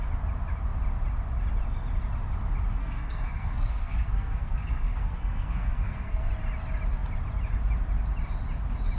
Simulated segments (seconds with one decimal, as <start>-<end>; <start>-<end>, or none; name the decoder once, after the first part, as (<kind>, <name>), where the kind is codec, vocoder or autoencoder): 2.8-6.3 (codec, SNAC)